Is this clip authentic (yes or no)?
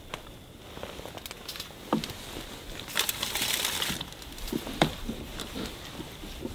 yes